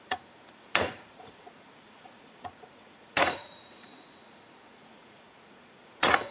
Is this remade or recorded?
remade